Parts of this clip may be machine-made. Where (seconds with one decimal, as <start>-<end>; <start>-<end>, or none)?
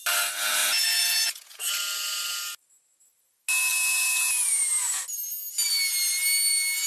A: 0.6-1.7; 3.7-4.6